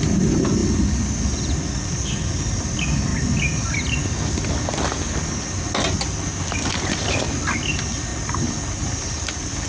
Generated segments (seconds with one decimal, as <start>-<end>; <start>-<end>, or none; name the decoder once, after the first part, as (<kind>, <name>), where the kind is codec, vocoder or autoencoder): 0.0-3.1 (vocoder, BigVGAN v2); 6.9-8.1; 8.7-9.7